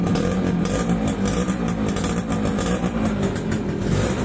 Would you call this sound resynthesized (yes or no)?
no